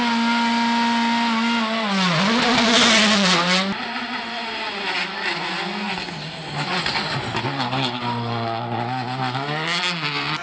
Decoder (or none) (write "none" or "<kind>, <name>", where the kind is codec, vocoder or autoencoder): none